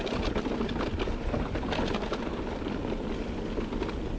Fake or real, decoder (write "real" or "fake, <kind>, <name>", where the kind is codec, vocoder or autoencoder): real